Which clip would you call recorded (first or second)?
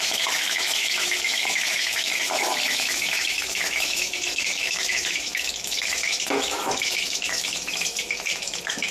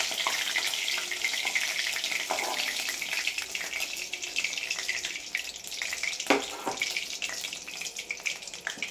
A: second